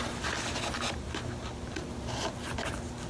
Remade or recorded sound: recorded